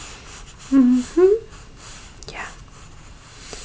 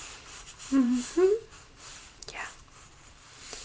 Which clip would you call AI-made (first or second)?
second